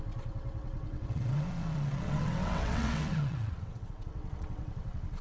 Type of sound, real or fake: fake